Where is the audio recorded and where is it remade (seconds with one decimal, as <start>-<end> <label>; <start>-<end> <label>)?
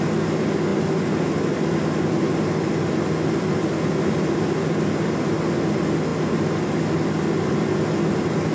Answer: 0.0-8.5 recorded